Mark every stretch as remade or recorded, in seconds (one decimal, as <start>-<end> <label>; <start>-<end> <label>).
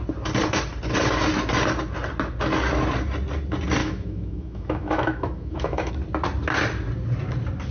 0.0-3.8 recorded; 3.8-5.9 remade; 5.9-7.7 recorded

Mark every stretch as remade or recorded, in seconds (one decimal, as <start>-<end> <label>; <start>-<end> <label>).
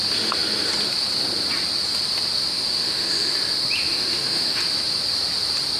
0.0-2.5 recorded; 2.5-3.3 remade; 3.3-3.9 recorded; 3.9-4.6 remade; 4.6-5.8 recorded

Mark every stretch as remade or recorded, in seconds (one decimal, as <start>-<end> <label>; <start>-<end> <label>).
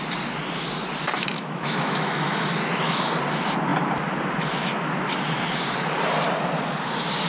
0.0-1.3 recorded; 1.3-3.0 remade; 3.0-7.3 recorded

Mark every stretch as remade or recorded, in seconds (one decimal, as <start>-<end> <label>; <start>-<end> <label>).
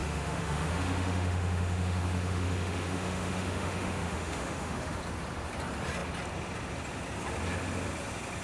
0.0-5.0 remade; 5.0-8.4 recorded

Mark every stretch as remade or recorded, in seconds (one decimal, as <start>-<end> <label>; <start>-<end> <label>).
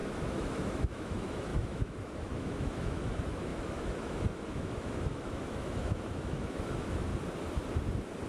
0.0-7.1 remade; 7.1-8.3 recorded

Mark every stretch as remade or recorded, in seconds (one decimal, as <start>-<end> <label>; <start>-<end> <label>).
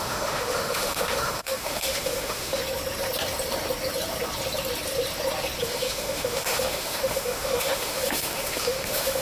0.0-2.6 remade; 2.6-5.6 recorded; 5.6-9.2 remade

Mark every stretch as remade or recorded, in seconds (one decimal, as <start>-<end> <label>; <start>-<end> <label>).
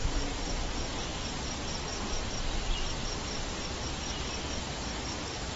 0.0-5.6 recorded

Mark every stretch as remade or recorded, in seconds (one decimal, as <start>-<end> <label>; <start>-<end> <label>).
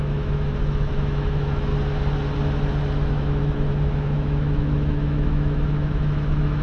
0.0-1.7 remade; 1.7-3.1 recorded; 3.1-6.6 remade